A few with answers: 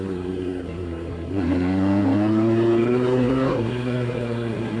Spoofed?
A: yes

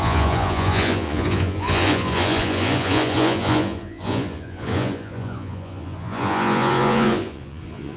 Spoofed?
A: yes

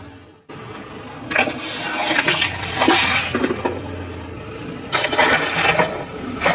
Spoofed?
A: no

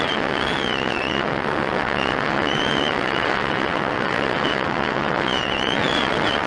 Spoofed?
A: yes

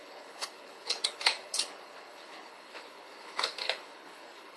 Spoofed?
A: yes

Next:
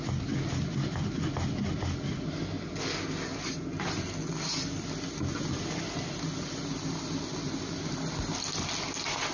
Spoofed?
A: no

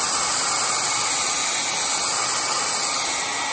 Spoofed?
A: no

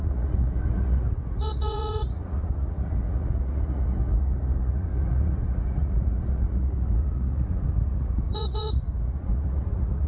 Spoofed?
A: yes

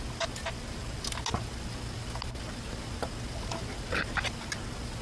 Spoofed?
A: no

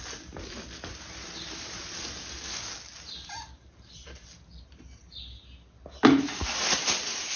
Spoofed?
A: no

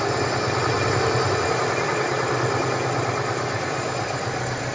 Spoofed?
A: no